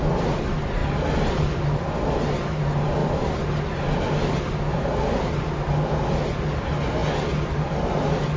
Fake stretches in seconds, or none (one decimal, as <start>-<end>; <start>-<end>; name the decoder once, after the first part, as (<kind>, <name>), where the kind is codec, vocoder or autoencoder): none